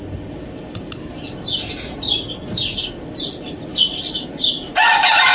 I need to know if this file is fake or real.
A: real